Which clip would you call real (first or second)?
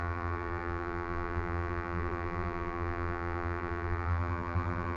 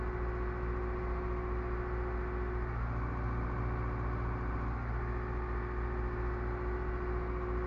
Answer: second